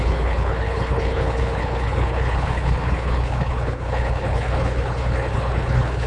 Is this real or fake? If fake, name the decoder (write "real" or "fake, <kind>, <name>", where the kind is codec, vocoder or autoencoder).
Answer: fake, codec, HILCodec